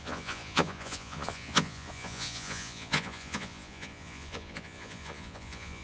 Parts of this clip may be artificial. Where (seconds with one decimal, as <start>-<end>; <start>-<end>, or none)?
0.0-5.8